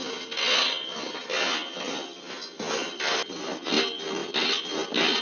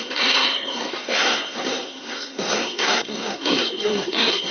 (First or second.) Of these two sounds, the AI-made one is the second